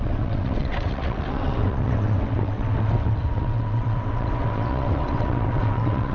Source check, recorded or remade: remade